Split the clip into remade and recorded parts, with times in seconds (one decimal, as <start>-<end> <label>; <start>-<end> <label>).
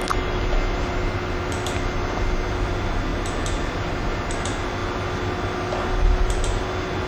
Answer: 0.0-7.1 recorded